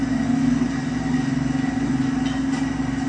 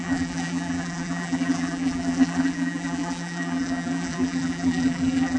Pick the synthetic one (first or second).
second